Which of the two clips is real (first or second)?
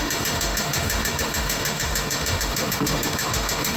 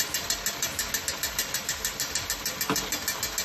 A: second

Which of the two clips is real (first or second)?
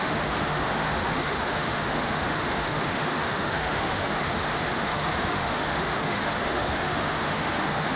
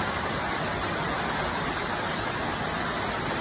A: second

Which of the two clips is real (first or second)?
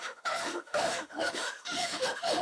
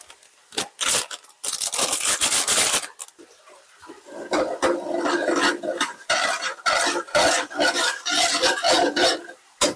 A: second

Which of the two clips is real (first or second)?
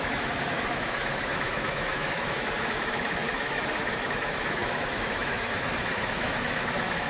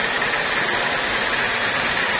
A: second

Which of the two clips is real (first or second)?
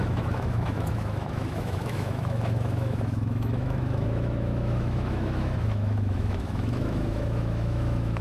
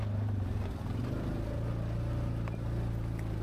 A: second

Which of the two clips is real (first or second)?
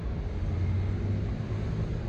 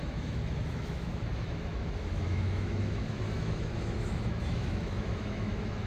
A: first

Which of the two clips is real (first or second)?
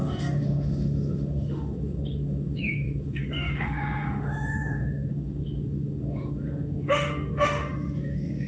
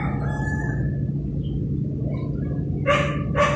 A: second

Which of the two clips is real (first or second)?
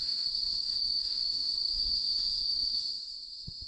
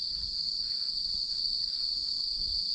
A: second